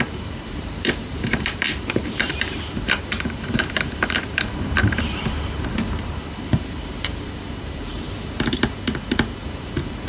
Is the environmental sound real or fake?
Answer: fake